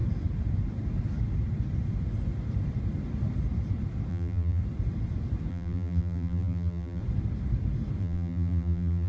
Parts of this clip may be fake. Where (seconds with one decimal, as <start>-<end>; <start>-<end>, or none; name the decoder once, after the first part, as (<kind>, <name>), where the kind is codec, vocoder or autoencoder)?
4.1-4.6 (vocoder, BigVGAN v2); 5.5-7.0; 8.0-9.1